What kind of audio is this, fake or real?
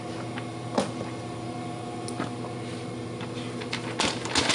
real